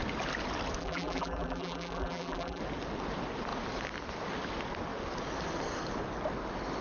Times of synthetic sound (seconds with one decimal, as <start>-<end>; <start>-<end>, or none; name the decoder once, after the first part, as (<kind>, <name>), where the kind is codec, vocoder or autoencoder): 0.8-2.6 (vocoder, BigVGAN v2)